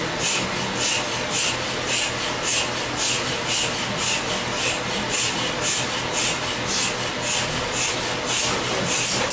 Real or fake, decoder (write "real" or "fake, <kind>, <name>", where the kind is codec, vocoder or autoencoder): real